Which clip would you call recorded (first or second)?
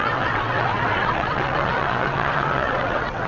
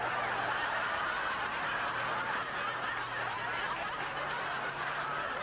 second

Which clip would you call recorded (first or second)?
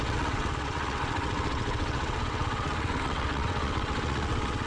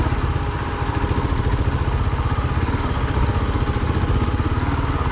second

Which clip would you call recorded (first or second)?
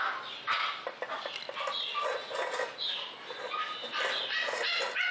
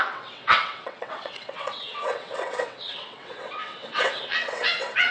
first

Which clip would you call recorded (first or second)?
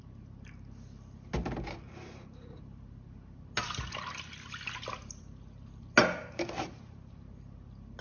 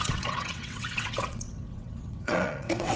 first